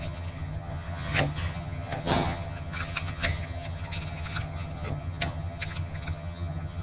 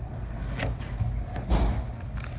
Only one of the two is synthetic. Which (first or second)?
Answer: first